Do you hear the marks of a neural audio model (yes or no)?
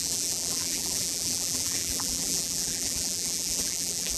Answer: yes